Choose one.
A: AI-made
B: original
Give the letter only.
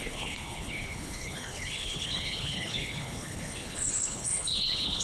A